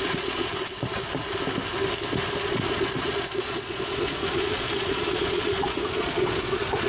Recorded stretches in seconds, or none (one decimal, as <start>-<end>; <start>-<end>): 0.5-2.4